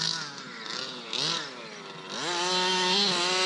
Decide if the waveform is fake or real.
real